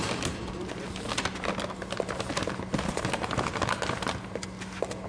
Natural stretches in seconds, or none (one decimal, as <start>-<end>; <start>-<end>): 0.0-5.1

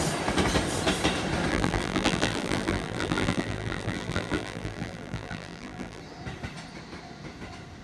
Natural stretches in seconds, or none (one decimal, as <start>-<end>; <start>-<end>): 0.0-1.5; 6.0-7.8

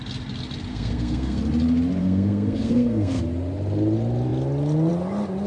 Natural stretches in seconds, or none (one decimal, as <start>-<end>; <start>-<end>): 0.0-0.7; 1.4-2.0; 3.2-5.5

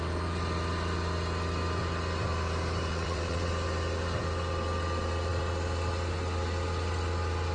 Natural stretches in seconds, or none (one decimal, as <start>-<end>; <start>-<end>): 0.0-2.9; 3.5-7.5

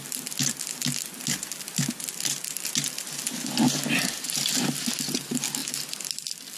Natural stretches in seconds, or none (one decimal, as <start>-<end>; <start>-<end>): 0.0-6.6

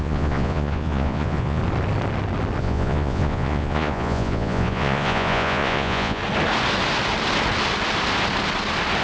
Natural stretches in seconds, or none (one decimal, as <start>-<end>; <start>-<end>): 1.6-2.6; 6.2-9.0